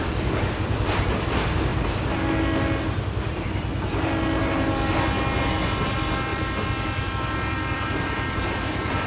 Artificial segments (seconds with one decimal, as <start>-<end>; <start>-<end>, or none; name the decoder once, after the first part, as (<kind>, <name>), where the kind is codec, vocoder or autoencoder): 0.0-1.7 (vocoder, BigVGAN v2); 2.8-3.7; 5.7-9.1